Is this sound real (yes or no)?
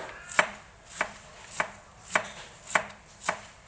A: no